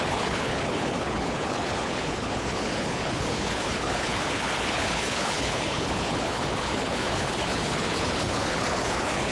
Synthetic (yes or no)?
yes